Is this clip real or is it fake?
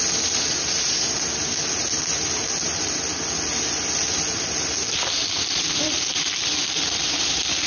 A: real